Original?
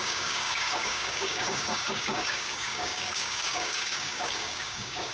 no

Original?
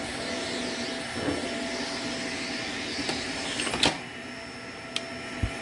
yes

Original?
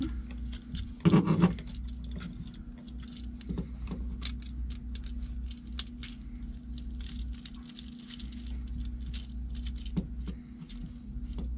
yes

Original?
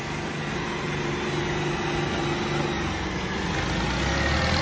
yes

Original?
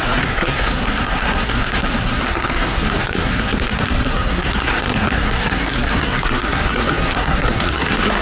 no